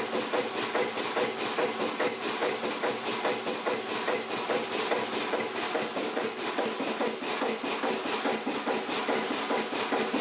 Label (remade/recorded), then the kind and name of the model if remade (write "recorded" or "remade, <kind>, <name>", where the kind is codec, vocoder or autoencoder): recorded